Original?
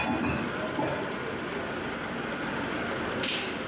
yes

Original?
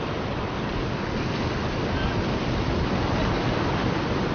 yes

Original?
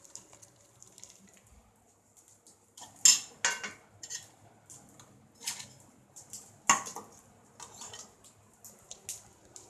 yes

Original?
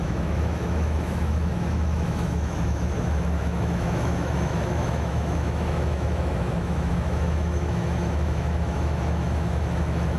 no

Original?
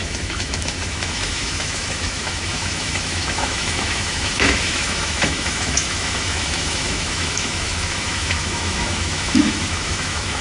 no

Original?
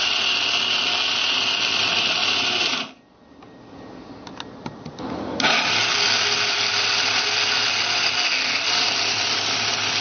yes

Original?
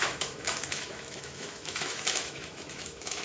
no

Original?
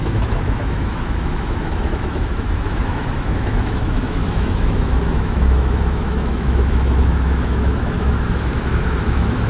no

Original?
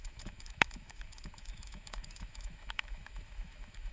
no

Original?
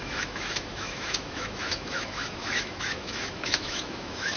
no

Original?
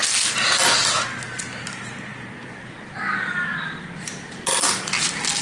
yes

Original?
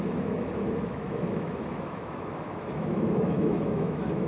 no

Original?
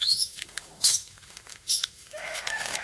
no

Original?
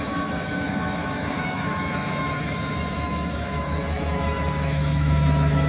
no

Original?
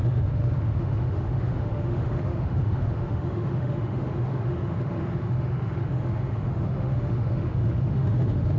no